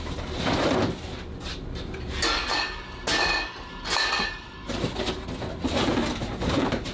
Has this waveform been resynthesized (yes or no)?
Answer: no